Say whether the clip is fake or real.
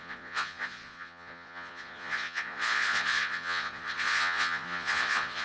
fake